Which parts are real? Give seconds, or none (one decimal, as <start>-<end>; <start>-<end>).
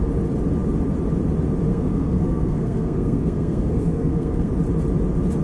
0.0-1.7; 4.5-5.4